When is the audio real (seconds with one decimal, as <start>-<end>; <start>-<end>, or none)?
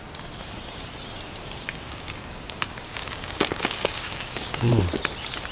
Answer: 0.0-1.4; 4.7-5.5